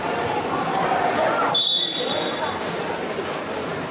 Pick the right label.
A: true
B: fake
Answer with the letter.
A